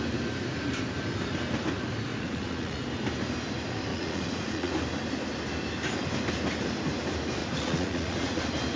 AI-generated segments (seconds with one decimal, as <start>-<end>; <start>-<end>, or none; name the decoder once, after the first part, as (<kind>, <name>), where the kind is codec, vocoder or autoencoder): 2.1-2.8 (vocoder, Vocos); 3.9-4.7; 7.4-8.4